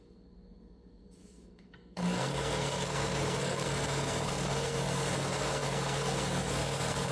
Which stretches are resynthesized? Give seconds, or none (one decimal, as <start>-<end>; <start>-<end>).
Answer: 0.0-7.1